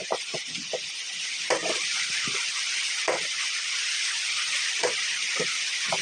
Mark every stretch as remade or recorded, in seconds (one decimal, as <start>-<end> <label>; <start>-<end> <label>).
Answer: 0.0-1.6 recorded; 1.6-5.2 remade; 5.2-6.0 recorded